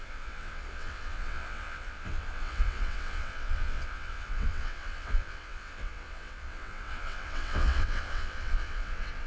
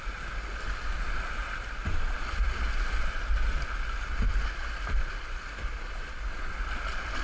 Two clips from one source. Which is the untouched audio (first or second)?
second